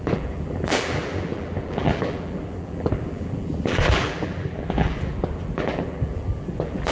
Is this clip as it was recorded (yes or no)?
no